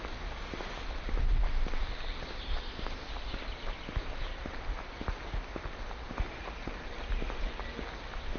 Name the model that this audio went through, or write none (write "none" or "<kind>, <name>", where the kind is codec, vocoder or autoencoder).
none